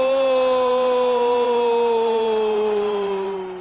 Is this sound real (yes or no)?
no